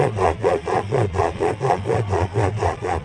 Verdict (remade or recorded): remade